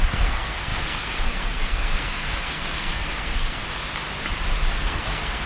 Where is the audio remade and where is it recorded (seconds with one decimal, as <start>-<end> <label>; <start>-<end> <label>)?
0.0-3.6 remade; 3.6-4.8 recorded; 4.8-5.5 remade